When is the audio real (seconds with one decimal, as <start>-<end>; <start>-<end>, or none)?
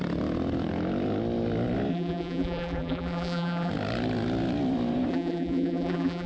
0.0-1.9; 3.7-5.1